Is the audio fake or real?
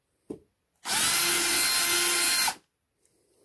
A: real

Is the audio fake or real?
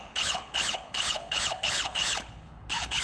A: fake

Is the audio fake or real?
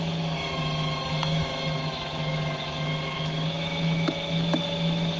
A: fake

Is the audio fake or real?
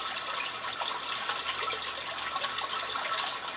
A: real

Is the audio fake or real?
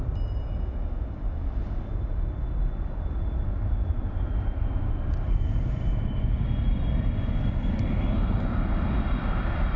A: real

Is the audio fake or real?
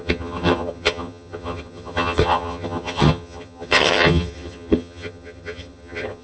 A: fake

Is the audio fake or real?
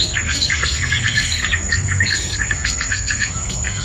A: fake